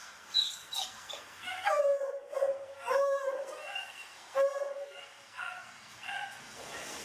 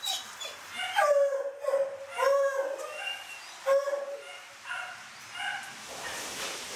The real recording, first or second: second